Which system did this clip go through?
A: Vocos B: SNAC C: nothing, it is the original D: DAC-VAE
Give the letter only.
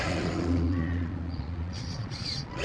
A